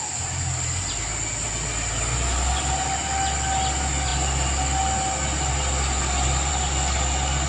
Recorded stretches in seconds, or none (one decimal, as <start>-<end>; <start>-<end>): 0.0-7.5